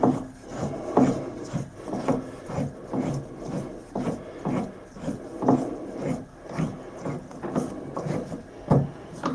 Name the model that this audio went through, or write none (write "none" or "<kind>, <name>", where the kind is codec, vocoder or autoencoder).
none